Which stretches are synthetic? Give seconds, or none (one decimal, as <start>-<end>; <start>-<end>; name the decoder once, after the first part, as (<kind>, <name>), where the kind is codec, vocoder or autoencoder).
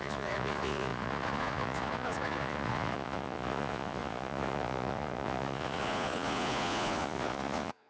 0.0-7.9 (vocoder, Vocos)